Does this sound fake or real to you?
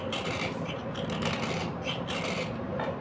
real